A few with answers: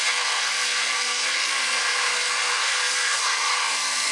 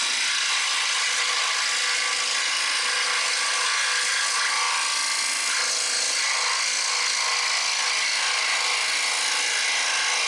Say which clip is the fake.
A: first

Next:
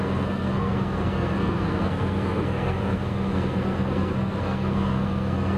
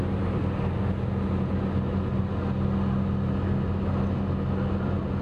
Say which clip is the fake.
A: first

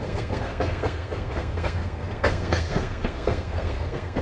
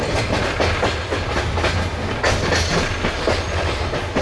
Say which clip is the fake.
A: first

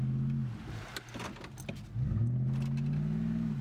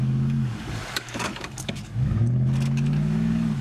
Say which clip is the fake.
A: second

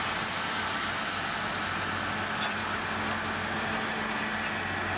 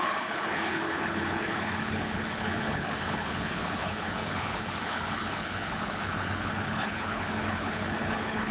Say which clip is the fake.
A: second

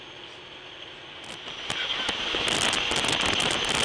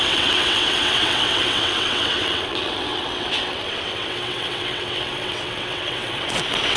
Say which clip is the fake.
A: second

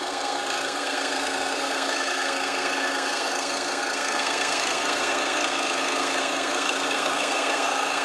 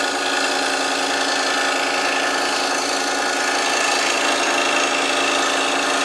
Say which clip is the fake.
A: first